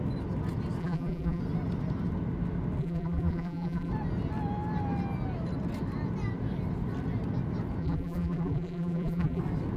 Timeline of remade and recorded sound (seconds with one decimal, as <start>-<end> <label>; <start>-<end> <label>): 0.0-0.8 recorded; 0.8-1.4 remade; 1.4-2.8 recorded; 2.8-3.9 remade; 3.9-7.8 recorded; 7.8-9.4 remade; 9.4-9.8 recorded